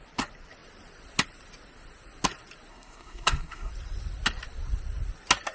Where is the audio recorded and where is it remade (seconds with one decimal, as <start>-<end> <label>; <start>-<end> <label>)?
0.0-2.7 recorded; 2.7-3.7 remade; 3.7-5.5 recorded